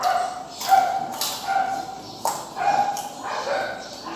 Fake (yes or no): no